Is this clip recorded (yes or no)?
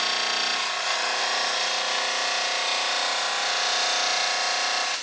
yes